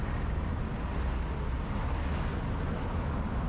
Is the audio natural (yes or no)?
yes